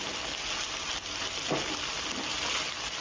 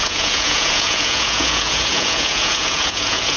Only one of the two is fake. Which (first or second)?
second